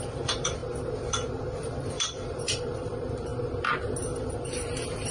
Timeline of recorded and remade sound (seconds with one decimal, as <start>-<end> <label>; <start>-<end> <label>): 0.0-0.6 remade; 0.6-1.4 recorded; 1.4-3.3 remade; 3.3-3.9 recorded; 3.9-5.1 remade